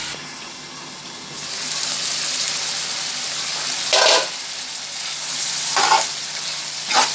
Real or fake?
real